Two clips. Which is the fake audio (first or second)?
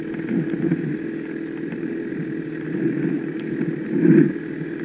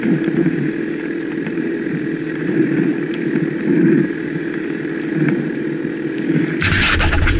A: second